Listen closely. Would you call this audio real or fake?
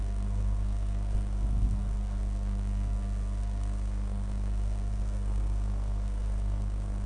fake